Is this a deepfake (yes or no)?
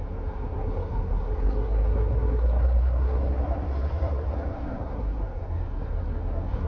yes